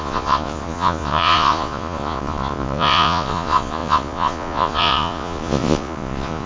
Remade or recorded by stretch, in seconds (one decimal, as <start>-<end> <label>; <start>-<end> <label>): 0.0-6.5 remade

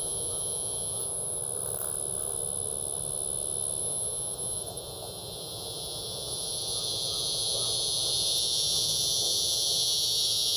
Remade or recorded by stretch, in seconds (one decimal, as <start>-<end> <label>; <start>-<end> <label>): 0.0-1.4 remade; 1.4-3.8 recorded; 3.8-10.6 remade

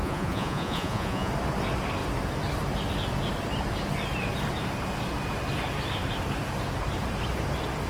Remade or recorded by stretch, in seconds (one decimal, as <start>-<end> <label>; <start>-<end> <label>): 0.0-1.3 remade; 1.3-7.9 recorded

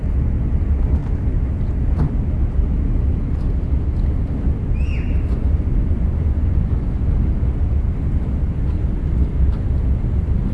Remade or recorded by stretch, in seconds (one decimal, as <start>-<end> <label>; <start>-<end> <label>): 0.0-5.3 recorded; 5.3-7.0 remade; 7.0-10.5 recorded

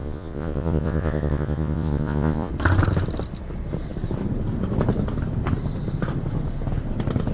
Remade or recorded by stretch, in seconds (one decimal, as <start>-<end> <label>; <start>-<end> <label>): 0.0-2.5 remade; 2.5-7.3 recorded